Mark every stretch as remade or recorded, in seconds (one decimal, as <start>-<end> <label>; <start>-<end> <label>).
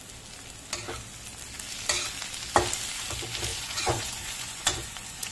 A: 0.0-3.5 recorded; 3.5-5.3 remade